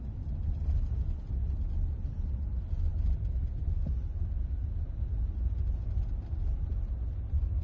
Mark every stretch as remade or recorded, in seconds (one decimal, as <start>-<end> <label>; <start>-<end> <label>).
0.0-7.6 recorded